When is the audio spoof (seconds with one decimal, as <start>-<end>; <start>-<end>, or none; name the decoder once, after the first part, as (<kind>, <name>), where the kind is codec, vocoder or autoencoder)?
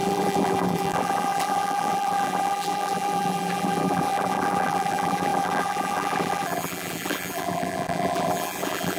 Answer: 0.0-9.0 (vocoder, BigVGAN v2)